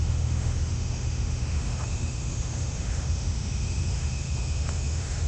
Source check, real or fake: fake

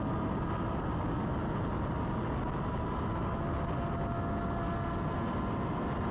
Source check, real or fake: real